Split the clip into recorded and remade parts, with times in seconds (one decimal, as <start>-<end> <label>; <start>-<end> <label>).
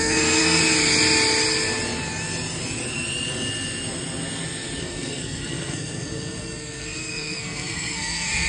0.0-0.6 remade; 0.6-4.8 recorded; 4.8-8.5 remade